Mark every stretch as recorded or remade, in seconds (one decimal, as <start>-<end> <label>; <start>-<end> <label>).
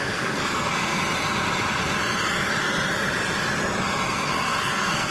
0.0-1.0 remade; 1.0-4.1 recorded; 4.1-5.1 remade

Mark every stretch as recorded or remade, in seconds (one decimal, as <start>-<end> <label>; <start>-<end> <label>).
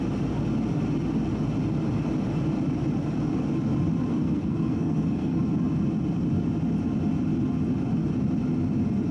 0.0-4.1 recorded; 4.1-5.4 remade; 5.4-9.1 recorded